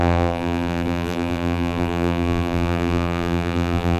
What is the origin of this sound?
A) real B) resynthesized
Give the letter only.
B